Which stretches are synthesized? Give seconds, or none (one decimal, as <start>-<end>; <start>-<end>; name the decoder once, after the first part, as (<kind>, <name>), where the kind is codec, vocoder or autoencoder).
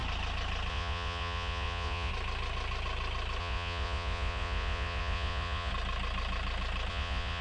0.7-2.1 (vocoder, Vocos); 3.4-5.7; 6.9-7.4